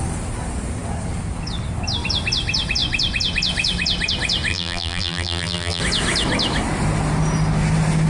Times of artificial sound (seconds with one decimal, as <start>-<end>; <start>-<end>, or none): 4.5-5.8